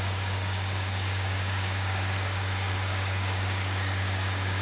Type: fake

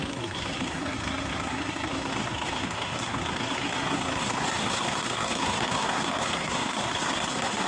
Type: fake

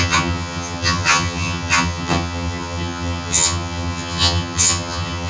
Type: fake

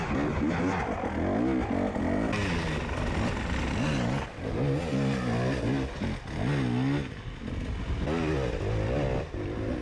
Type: real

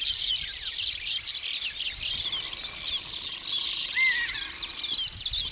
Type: real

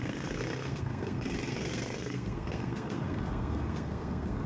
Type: fake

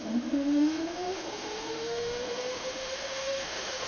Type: fake